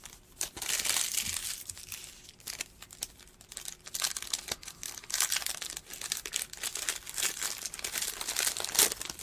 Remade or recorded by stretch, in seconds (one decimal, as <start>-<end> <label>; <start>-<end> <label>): 0.0-9.2 recorded